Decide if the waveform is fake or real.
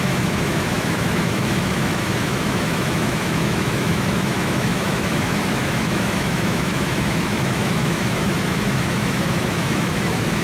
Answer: fake